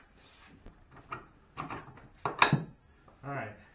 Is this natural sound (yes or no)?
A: yes